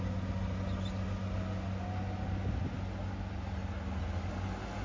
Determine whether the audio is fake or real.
real